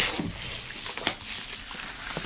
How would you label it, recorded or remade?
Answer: recorded